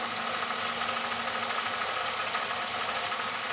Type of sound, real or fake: real